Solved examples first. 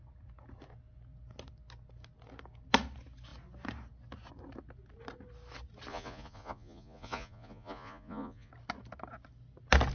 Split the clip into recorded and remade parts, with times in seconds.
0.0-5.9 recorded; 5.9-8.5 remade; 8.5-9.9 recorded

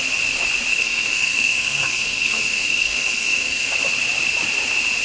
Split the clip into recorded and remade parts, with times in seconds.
0.0-0.7 recorded; 0.7-3.7 remade; 3.7-5.0 recorded

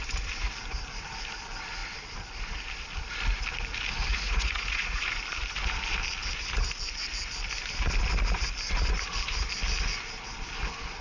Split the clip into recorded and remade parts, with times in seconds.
0.0-4.1 recorded; 4.1-5.0 remade; 5.0-11.0 recorded

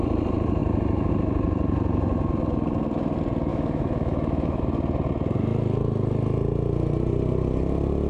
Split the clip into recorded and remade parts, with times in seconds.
0.0-3.5 recorded; 3.5-4.6 remade; 4.6-8.1 recorded

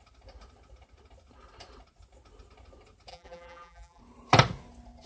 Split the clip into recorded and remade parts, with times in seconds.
0.0-3.1 recorded; 3.1-4.0 remade; 4.0-5.1 recorded

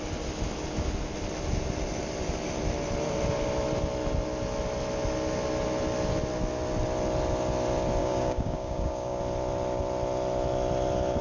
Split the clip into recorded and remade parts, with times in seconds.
0.0-8.0 recorded; 8.0-9.2 remade; 9.2-11.2 recorded